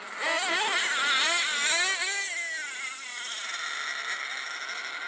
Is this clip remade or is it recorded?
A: recorded